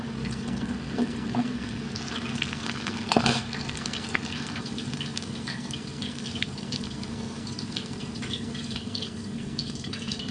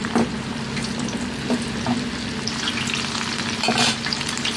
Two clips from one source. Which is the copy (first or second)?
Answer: first